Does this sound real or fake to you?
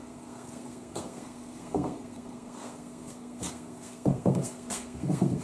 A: fake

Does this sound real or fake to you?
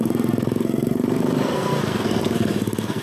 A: fake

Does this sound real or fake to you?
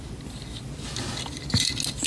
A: real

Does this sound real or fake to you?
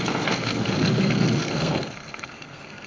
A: fake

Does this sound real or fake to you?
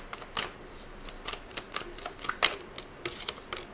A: real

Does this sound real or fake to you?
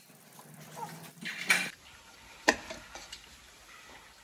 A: real